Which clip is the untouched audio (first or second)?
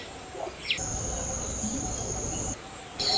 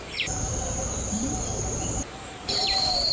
first